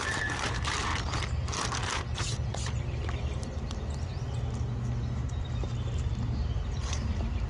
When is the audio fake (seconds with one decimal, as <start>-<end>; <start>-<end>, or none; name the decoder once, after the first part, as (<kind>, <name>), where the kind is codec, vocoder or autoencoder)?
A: 0.0-0.9 (vocoder, BigVGAN v2); 5.4-7.5